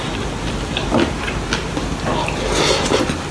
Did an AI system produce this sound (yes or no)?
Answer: no